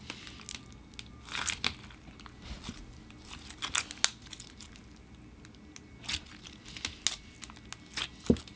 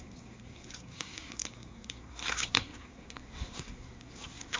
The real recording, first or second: first